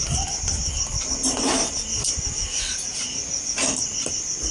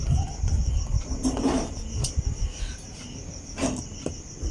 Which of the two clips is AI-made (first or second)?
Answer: second